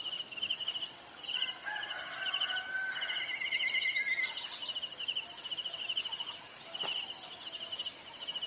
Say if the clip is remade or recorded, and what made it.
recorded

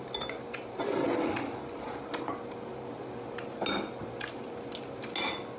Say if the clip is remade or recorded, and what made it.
recorded